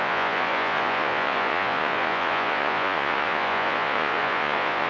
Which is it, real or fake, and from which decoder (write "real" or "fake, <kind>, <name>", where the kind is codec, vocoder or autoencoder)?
fake, vocoder, Vocos